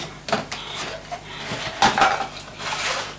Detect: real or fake real